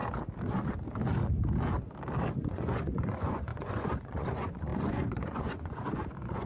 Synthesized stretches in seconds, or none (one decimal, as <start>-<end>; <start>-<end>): 2.4-6.5